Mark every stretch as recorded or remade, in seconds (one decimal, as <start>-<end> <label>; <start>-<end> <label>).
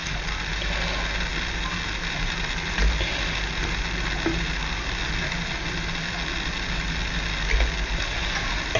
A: 0.0-8.8 recorded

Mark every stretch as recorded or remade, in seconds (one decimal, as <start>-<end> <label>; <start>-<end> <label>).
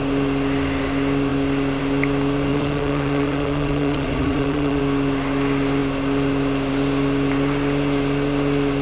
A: 0.0-2.5 recorded; 2.5-4.8 remade; 4.8-8.8 recorded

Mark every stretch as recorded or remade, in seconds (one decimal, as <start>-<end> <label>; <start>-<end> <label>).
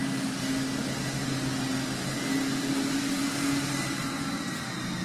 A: 0.0-5.0 recorded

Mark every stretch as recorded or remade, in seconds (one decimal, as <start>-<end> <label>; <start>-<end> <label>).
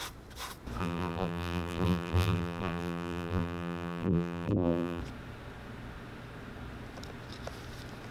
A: 0.0-0.8 recorded; 0.8-5.0 remade; 5.0-8.1 recorded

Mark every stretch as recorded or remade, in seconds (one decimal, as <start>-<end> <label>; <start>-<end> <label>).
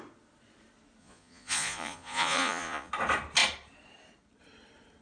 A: 0.0-1.0 recorded; 1.0-2.9 remade; 2.9-5.0 recorded